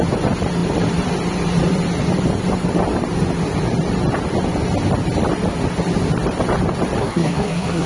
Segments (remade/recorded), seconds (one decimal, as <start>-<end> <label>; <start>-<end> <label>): 0.0-7.0 recorded; 7.0-7.9 remade